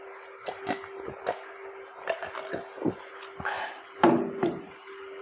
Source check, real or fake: real